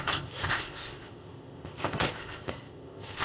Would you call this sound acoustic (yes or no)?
no